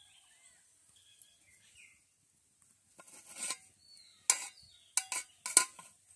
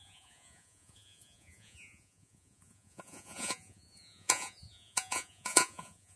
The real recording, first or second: first